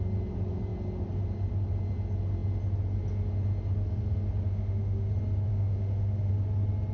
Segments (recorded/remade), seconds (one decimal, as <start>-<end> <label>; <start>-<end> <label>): 0.0-4.5 recorded; 4.5-5.1 remade; 5.1-5.5 recorded; 5.5-6.3 remade; 6.3-6.9 recorded